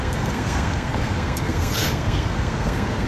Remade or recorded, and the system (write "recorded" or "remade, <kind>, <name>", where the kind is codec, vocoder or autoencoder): remade, codec, SNAC